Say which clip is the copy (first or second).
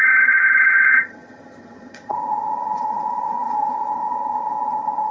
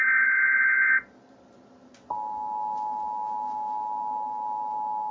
first